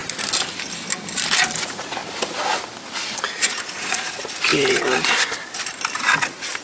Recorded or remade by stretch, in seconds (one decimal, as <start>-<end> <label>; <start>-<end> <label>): 0.0-1.6 recorded; 1.6-2.0 remade; 2.0-3.3 recorded; 3.3-4.5 remade; 4.5-6.6 recorded